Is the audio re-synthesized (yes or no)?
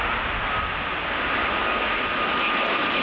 no